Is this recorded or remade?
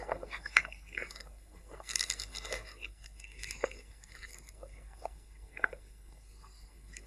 remade